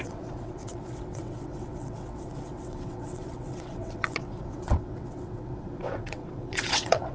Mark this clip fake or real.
fake